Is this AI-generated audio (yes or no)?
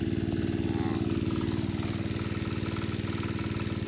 no